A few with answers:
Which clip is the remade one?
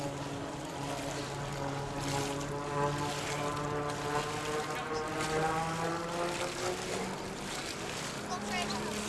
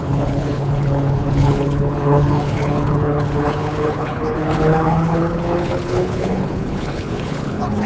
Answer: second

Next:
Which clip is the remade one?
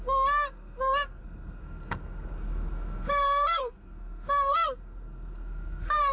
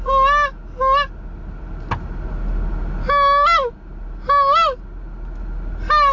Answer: first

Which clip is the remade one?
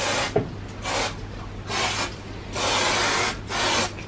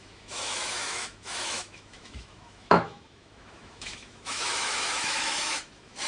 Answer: second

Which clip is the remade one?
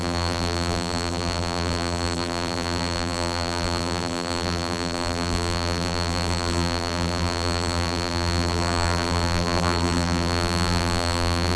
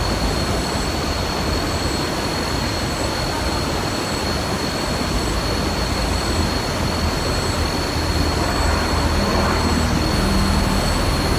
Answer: first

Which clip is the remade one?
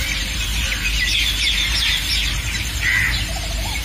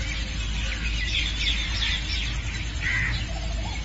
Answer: first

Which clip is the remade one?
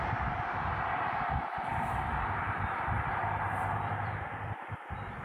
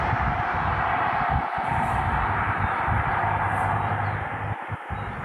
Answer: first